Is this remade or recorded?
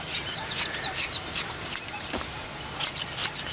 recorded